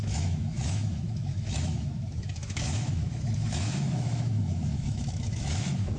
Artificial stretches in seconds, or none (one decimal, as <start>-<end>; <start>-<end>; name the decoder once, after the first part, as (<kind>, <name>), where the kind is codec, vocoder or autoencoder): 0.0-6.0 (autoencoder, DAC-VAE)